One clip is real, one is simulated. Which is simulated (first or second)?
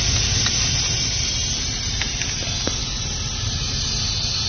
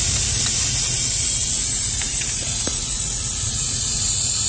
second